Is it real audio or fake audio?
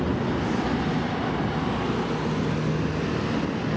real